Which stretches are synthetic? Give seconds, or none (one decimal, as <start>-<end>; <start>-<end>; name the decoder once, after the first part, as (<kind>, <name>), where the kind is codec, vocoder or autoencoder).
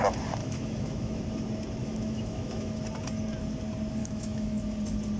0.4-1.2 (autoencoder, DAC-VAE); 1.8-2.8; 4.0-4.6